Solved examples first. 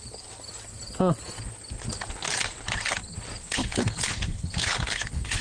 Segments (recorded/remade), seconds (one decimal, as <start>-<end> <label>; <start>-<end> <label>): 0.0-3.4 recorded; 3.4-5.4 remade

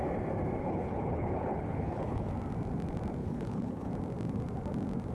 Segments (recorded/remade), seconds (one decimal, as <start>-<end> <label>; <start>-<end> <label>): 0.0-0.6 recorded; 0.6-2.3 remade; 2.3-3.2 recorded; 3.2-3.9 remade; 3.9-5.1 recorded

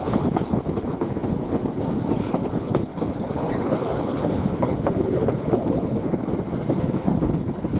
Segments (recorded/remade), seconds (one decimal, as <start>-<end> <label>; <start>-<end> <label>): 0.0-1.6 remade; 1.6-2.2 recorded; 2.2-6.2 remade; 6.2-6.8 recorded; 6.8-7.8 remade

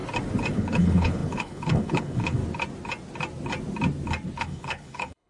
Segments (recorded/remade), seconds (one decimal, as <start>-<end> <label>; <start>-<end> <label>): 0.0-0.5 recorded; 0.5-2.4 remade; 2.4-4.4 recorded; 4.4-5.3 remade